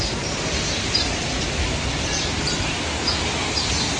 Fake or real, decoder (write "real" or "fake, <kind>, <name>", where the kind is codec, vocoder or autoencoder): real